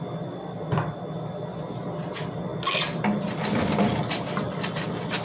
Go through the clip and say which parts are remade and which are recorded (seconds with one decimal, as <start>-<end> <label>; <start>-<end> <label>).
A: 0.0-2.5 remade; 2.5-3.1 recorded; 3.1-3.9 remade; 3.9-4.8 recorded; 4.8-5.2 remade